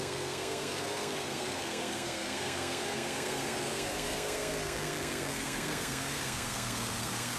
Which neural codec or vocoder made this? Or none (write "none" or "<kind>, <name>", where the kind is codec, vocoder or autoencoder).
codec, SNAC